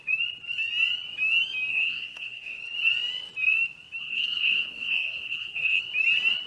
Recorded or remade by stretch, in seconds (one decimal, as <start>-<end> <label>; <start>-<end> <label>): 0.0-1.7 recorded; 1.7-2.6 remade; 2.6-4.0 recorded; 4.0-5.8 remade; 5.8-6.5 recorded